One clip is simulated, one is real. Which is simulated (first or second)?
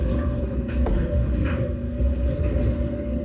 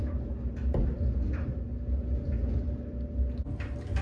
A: first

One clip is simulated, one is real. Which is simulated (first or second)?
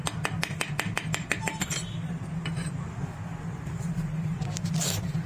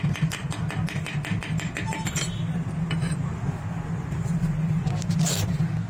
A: first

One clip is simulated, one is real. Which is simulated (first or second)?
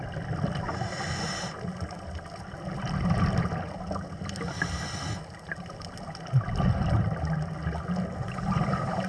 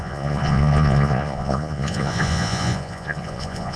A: second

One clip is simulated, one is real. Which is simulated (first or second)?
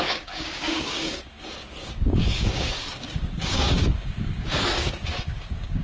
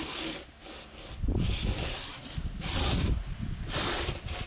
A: first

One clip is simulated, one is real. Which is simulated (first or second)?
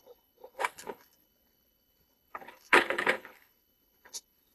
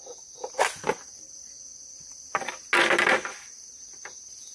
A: first